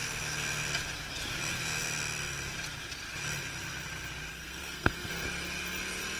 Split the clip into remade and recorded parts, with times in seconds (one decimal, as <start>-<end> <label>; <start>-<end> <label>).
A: 0.0-4.3 recorded; 4.3-5.1 remade; 5.1-6.2 recorded